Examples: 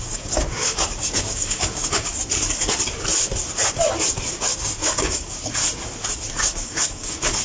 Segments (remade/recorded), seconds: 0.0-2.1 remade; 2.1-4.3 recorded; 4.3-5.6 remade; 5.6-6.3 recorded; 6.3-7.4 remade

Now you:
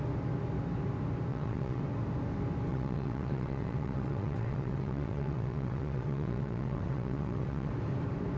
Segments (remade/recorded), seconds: 0.0-1.3 recorded; 1.3-1.8 remade; 1.8-2.7 recorded; 2.7-7.7 remade; 7.7-8.4 recorded

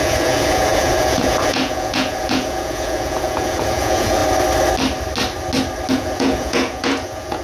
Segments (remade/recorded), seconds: 0.0-4.2 remade; 4.2-5.9 recorded; 5.9-7.4 remade

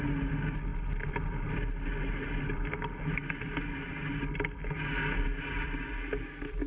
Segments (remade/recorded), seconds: 0.0-6.7 recorded

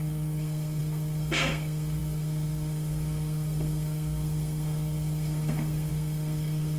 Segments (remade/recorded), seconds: 0.0-6.8 remade

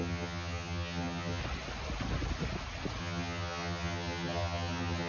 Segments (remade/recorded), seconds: 0.0-1.4 remade; 1.4-3.0 recorded; 3.0-5.1 remade